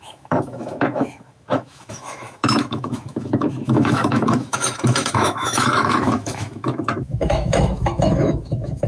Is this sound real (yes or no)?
no